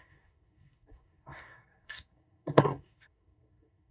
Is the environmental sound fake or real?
fake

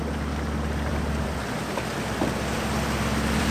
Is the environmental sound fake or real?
fake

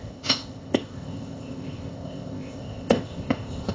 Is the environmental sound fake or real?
fake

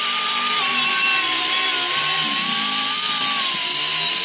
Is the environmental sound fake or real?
real